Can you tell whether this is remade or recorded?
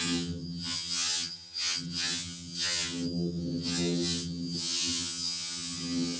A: remade